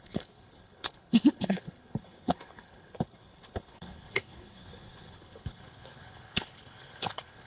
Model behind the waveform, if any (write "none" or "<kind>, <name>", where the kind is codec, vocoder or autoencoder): codec, HILCodec